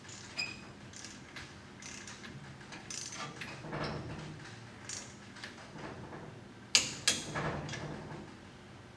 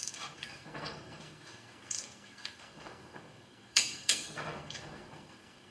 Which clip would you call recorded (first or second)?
first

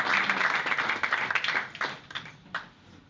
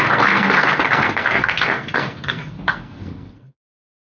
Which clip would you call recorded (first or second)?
first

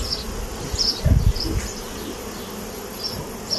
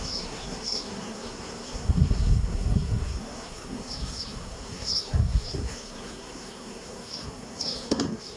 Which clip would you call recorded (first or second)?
first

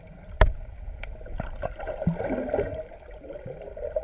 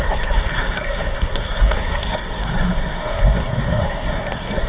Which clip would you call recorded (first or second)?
first